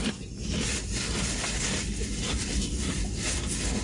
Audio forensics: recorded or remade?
recorded